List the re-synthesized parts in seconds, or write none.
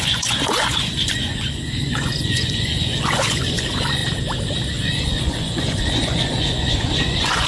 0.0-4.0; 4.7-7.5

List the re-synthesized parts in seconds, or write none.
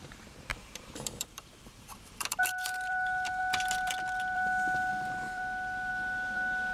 0.5-3.4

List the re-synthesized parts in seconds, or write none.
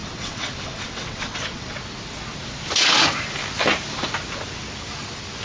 0.0-1.7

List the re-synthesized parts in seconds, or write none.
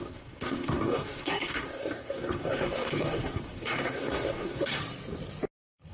0.0-4.8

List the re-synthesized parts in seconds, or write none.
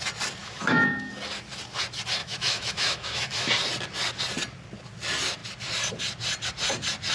0.4-1.1; 2.2-3.5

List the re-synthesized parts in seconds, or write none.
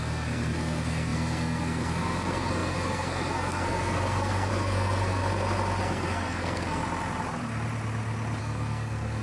0.0-5.2; 5.8-6.8; 8.4-9.2